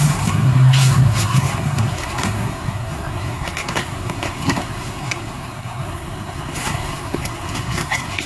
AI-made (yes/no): yes